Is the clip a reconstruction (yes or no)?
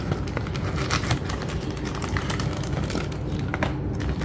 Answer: no